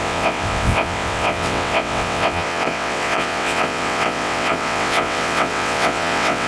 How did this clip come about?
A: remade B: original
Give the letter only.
A